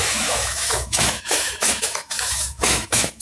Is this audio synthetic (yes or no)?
yes